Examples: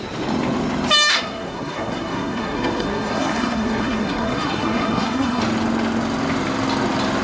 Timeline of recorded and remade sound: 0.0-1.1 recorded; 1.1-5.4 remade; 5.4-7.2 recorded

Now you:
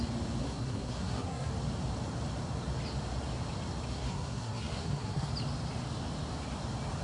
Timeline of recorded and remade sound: 0.0-0.4 recorded; 0.4-1.5 remade; 1.5-3.9 recorded; 3.9-5.3 remade; 5.3-7.0 recorded

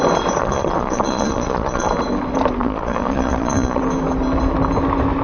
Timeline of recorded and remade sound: 0.0-0.4 recorded; 0.4-1.9 remade; 1.9-2.6 recorded; 2.6-3.8 remade; 3.8-5.2 recorded

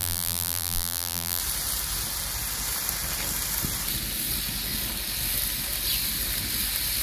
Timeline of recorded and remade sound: 0.0-1.4 remade; 1.4-7.0 recorded

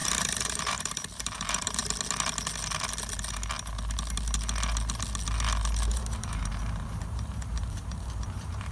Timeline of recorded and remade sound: 0.0-1.8 remade; 1.8-5.9 recorded; 5.9-8.7 remade